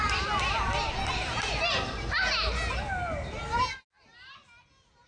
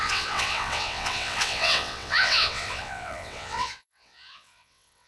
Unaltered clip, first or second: first